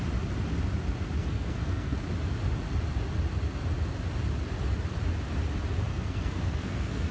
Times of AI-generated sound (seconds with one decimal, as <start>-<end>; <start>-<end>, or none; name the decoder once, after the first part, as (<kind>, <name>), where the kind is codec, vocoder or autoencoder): 1.2-2.0 (codec, SNAC); 5.9-7.1